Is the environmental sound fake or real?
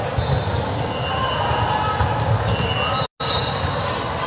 real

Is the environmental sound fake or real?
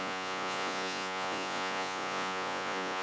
fake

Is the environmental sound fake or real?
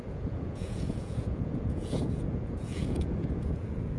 fake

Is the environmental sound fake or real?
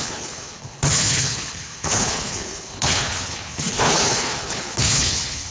fake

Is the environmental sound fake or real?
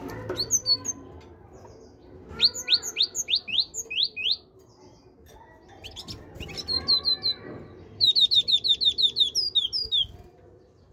real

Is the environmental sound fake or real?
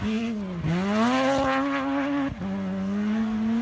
real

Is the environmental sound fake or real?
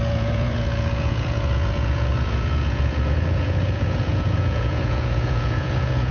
fake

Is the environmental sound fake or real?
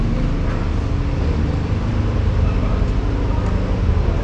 real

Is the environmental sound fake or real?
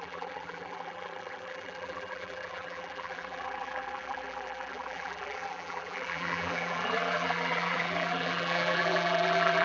fake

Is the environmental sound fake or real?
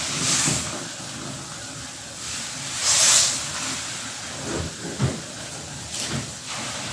real